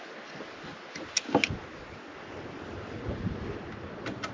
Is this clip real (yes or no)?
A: yes